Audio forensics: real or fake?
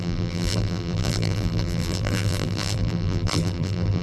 fake